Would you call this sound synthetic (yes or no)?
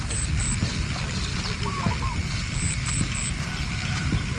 no